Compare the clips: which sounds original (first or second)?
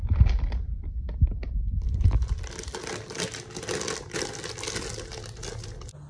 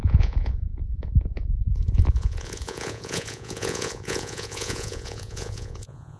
first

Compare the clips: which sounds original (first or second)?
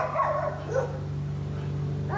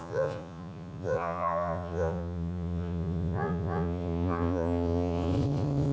first